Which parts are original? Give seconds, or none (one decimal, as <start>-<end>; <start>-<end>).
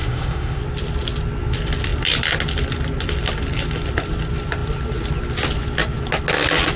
0.6-6.8